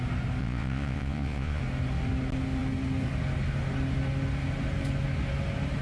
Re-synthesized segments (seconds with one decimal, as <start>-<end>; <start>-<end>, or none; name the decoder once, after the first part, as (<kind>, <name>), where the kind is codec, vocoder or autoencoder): 0.4-1.6 (vocoder, Vocos)